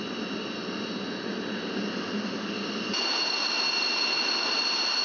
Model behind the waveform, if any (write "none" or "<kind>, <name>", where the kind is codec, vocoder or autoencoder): none